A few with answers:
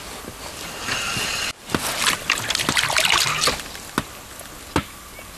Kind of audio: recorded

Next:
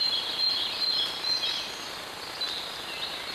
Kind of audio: recorded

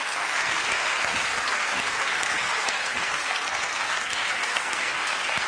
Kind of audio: remade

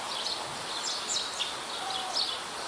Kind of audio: recorded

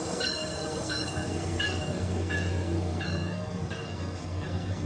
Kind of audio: remade